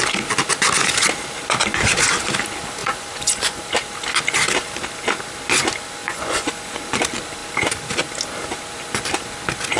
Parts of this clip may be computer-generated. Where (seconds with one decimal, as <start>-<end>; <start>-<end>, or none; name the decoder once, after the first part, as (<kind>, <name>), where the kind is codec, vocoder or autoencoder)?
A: 2.8-3.6 (vocoder, Vocos); 6.0-6.8